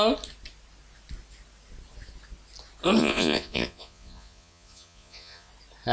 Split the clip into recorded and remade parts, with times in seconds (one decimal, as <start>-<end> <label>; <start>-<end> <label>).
0.0-3.0 recorded; 3.0-5.5 remade; 5.5-5.9 recorded